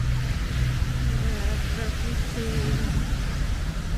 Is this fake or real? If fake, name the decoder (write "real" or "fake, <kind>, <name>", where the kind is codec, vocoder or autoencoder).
real